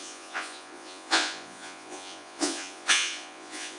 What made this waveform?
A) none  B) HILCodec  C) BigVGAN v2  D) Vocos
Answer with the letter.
D